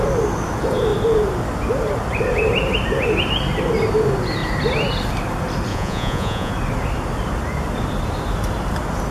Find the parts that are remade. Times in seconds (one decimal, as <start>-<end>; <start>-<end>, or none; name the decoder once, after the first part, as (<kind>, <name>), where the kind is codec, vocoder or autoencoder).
5.7-6.5 (vocoder, Vocos)